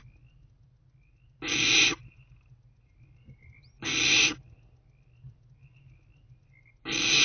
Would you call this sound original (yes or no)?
yes